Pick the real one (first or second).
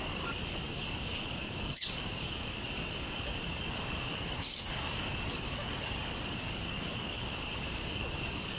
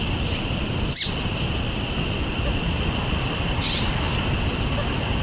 second